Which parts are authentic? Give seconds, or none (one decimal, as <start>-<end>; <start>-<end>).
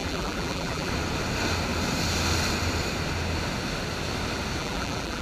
0.9-4.6